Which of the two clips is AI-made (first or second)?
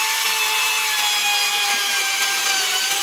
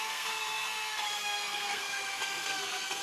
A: second